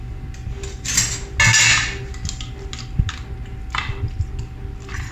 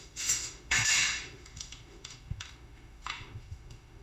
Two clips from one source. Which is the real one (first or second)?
first